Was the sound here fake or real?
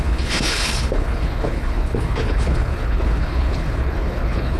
fake